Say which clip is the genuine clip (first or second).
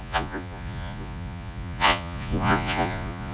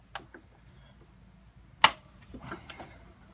second